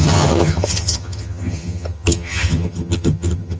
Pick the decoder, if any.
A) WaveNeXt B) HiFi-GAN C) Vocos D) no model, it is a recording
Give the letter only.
B